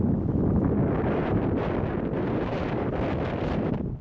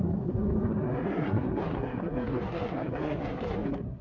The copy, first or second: second